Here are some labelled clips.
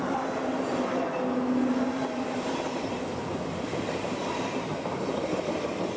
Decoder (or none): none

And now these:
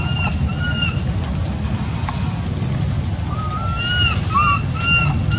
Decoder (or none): none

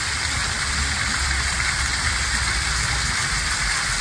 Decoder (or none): none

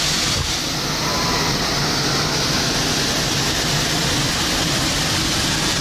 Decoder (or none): none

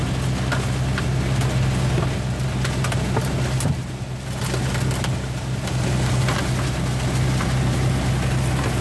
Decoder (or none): none